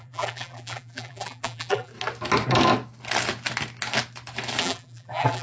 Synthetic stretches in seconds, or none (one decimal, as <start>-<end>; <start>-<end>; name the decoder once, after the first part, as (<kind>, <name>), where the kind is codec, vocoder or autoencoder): 0.0-1.9 (vocoder, BigVGAN v2); 4.6-5.4